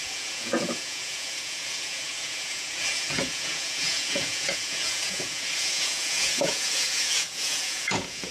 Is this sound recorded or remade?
remade